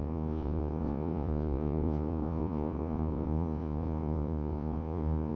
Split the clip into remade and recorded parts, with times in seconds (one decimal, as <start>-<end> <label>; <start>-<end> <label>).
0.0-5.3 remade